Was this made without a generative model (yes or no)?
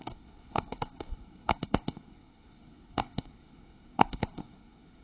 no